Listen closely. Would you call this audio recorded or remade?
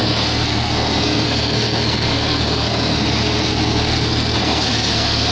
remade